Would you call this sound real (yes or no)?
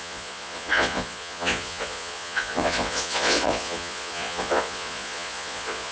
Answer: no